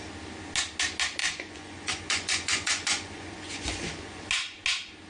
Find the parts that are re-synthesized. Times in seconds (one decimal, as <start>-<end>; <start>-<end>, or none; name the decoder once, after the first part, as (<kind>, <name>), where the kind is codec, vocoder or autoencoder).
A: 1.2-4.2 (vocoder, Vocos)